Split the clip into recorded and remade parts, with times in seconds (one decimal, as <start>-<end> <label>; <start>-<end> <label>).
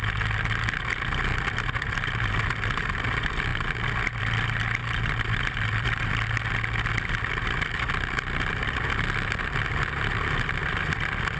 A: 0.0-4.8 recorded; 4.8-6.1 remade; 6.1-11.4 recorded